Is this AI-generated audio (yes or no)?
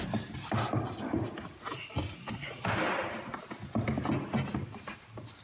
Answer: no